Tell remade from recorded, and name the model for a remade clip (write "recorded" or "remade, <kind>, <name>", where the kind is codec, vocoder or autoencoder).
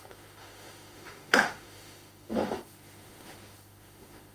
remade, autoencoder, DAC-VAE